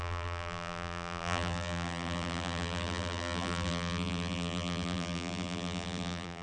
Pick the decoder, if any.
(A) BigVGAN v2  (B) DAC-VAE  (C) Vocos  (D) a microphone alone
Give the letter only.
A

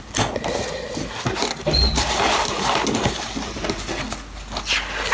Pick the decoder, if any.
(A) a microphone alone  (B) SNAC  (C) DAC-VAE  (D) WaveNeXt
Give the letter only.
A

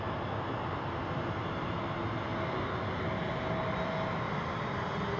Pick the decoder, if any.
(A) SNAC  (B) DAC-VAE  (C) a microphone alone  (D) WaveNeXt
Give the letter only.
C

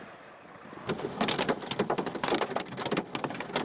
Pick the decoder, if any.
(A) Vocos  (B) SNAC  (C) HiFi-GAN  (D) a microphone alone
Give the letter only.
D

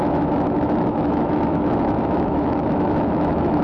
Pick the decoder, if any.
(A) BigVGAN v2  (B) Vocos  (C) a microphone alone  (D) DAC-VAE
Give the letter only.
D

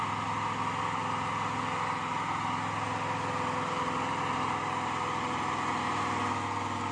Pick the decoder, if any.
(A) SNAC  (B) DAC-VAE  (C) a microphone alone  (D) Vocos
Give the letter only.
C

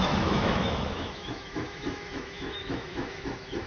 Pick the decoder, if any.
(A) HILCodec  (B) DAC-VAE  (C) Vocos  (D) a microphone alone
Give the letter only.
B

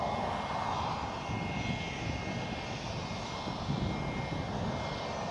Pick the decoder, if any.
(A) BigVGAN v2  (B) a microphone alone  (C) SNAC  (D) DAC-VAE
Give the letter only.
B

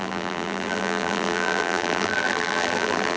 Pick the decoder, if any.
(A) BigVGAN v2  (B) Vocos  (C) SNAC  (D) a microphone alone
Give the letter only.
A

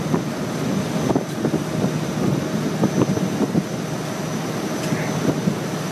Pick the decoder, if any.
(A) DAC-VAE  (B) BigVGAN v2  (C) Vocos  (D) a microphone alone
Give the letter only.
D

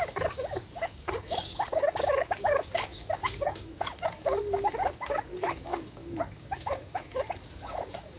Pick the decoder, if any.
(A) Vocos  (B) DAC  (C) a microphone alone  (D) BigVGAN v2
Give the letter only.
B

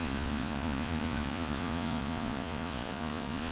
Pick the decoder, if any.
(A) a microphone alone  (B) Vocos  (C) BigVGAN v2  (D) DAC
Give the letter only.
B